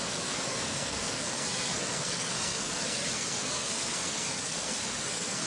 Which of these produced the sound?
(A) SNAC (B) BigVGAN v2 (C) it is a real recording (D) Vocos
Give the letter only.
A